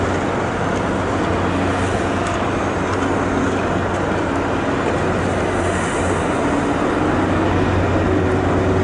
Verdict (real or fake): real